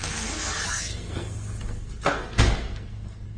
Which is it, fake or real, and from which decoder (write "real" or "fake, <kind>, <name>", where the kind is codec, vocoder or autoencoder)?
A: fake, codec, SNAC